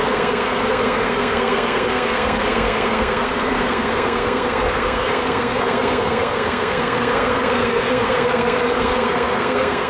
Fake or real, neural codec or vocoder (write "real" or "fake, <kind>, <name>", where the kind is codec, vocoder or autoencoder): fake, codec, SNAC